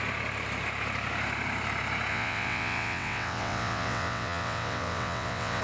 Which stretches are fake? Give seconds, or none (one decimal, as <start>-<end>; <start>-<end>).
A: 2.1-5.6